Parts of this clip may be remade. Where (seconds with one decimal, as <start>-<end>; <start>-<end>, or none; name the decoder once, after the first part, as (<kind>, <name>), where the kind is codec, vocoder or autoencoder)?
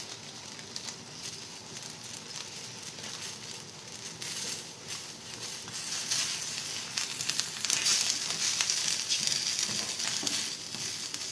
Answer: none